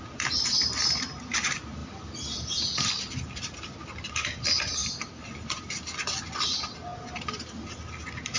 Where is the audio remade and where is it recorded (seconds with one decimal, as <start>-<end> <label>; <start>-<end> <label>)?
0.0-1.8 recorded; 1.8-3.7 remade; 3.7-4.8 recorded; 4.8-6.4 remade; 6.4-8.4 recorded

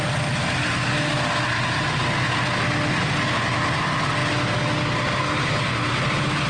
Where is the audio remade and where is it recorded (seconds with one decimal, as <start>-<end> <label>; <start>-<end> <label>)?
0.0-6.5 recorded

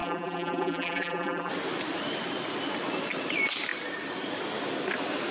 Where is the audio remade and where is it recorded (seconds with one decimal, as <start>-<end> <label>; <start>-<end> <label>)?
0.0-1.5 remade; 1.5-5.3 recorded

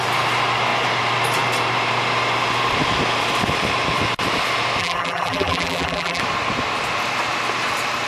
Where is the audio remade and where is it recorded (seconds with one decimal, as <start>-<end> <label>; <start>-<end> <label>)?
0.0-4.8 recorded; 4.8-6.2 remade; 6.2-8.1 recorded

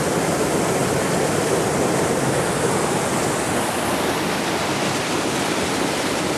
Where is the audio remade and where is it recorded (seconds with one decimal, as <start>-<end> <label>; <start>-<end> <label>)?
0.0-6.4 recorded